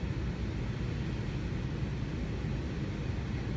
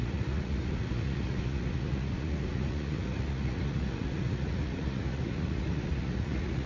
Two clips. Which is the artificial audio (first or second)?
second